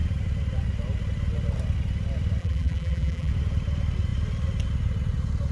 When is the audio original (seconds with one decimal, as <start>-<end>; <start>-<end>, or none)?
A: 0.0-2.4; 3.3-5.5